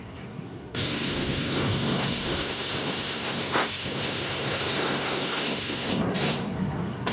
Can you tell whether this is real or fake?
fake